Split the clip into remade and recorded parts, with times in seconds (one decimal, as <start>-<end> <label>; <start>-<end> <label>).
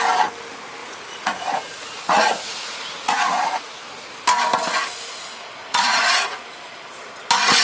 0.0-0.8 recorded; 0.8-3.8 remade; 3.8-5.6 recorded; 5.6-6.1 remade; 6.1-7.6 recorded